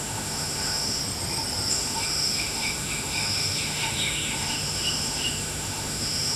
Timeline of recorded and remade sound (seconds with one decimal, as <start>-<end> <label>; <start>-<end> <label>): 0.0-1.0 remade; 1.0-1.7 recorded; 1.7-6.4 remade